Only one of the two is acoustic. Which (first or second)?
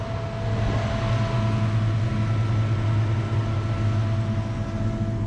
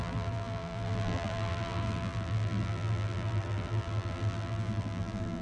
first